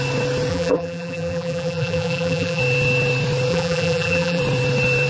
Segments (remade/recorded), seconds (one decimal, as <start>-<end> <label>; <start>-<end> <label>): 0.0-0.5 recorded; 0.5-2.6 remade; 2.6-3.5 recorded; 3.5-4.4 remade; 4.4-5.1 recorded

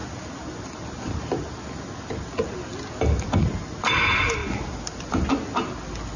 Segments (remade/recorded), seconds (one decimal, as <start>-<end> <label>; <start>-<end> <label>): 0.0-6.2 recorded

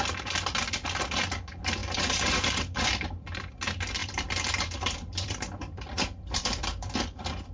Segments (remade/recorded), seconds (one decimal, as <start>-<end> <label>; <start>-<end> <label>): 0.0-1.8 recorded; 1.8-3.5 remade; 3.5-4.0 recorded; 4.0-6.9 remade; 6.9-7.5 recorded

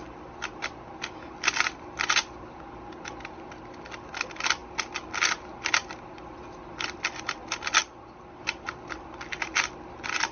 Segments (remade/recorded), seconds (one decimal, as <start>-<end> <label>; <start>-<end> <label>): 0.0-4.6 recorded; 4.6-5.1 remade; 5.1-10.3 recorded

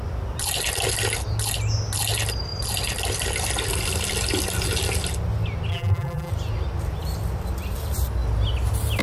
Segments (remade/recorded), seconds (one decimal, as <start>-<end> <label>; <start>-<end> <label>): 0.0-5.7 recorded; 5.7-6.3 remade; 6.3-9.0 recorded

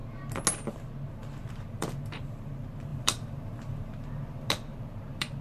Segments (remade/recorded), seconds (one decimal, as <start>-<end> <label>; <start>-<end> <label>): 0.0-1.1 recorded; 1.1-5.4 remade

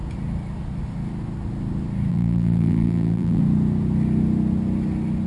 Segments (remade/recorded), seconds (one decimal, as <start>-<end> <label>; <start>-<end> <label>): 0.0-2.1 recorded; 2.1-3.4 remade; 3.4-5.3 recorded